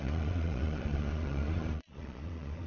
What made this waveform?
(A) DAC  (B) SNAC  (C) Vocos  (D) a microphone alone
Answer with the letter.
C